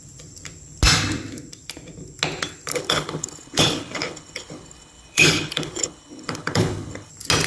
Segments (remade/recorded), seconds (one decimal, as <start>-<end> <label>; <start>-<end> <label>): 0.0-2.7 recorded; 2.7-7.1 remade; 7.1-7.5 recorded